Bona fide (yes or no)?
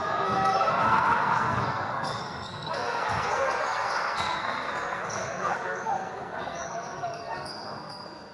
no